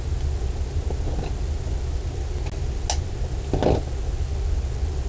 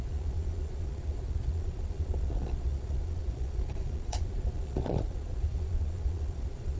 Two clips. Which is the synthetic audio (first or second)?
second